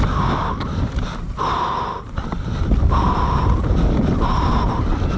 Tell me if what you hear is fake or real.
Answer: fake